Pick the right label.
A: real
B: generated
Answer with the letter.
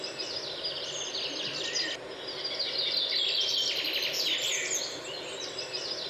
A